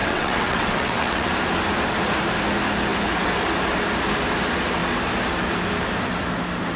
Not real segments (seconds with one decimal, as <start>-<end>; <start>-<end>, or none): 0.0-1.3

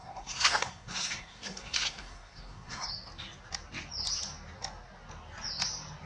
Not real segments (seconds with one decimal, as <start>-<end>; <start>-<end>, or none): 0.0-2.9

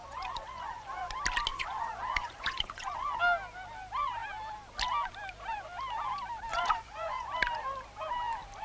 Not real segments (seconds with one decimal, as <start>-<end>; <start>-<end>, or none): 0.0-1.1; 1.5-3.2; 6.5-7.3

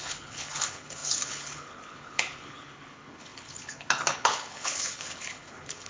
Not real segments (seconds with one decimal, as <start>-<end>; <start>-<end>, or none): 0.0-5.9